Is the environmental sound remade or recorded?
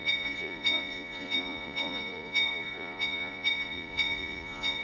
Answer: remade